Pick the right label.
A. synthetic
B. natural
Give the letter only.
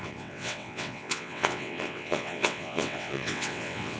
A